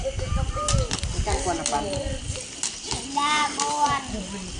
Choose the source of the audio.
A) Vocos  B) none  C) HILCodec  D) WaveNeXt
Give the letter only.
B